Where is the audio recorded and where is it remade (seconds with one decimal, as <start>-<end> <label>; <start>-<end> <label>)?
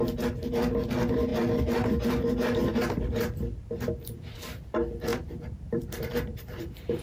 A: 0.0-5.1 recorded; 5.1-7.0 remade